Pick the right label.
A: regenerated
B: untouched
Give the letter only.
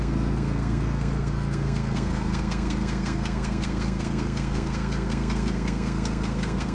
A